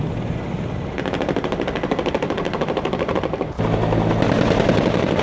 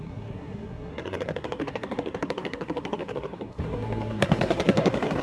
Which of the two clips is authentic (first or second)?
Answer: first